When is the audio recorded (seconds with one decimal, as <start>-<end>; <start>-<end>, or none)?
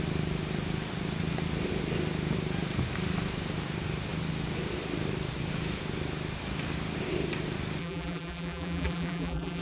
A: 0.0-7.8